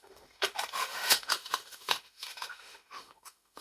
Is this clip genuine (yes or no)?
no